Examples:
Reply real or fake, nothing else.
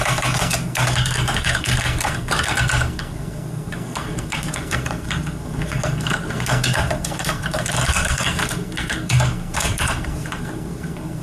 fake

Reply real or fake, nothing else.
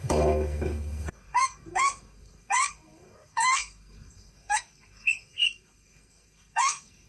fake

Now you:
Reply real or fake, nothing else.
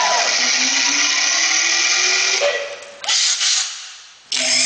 real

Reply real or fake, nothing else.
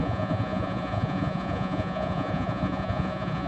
fake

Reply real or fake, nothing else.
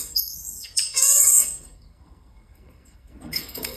fake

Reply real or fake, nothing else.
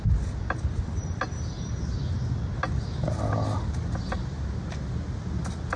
real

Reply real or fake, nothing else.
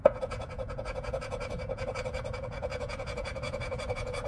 fake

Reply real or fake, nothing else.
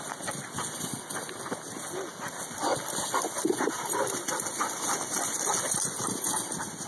real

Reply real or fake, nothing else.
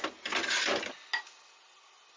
real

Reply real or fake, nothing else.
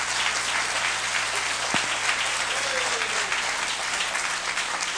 real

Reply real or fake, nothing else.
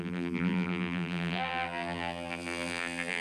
fake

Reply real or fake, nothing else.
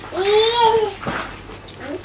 real